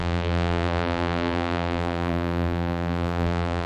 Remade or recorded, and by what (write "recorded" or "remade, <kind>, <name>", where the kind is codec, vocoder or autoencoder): remade, vocoder, BigVGAN v2